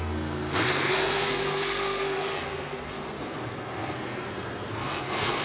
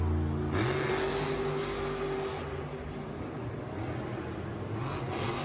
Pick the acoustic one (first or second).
second